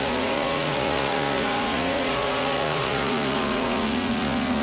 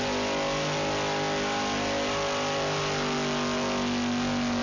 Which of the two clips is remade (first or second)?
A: first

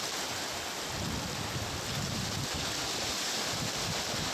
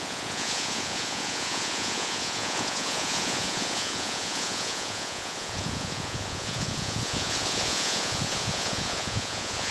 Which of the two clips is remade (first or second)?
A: second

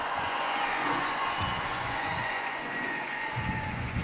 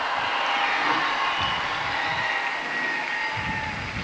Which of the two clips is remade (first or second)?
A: first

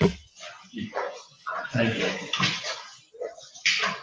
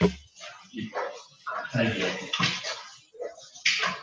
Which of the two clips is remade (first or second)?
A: first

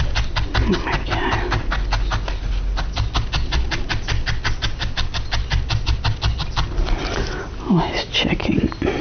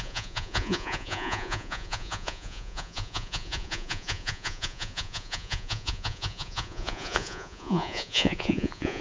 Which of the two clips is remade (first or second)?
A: second